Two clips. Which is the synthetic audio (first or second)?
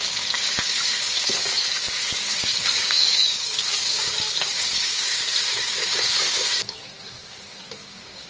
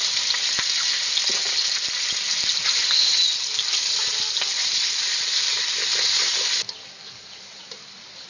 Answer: first